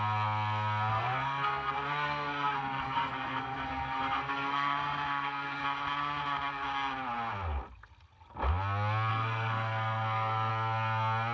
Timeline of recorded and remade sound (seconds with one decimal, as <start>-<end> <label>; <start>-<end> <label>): 0.0-0.9 recorded; 0.9-5.6 remade; 5.6-9.1 recorded; 9.1-10.5 remade; 10.5-11.3 recorded